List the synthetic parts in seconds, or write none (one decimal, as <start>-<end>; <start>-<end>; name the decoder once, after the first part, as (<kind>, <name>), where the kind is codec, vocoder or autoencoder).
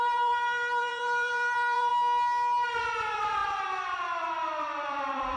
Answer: 0.0-1.9 (vocoder, BigVGAN v2); 2.7-5.4